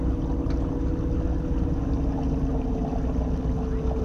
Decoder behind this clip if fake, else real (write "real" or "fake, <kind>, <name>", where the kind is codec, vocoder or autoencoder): real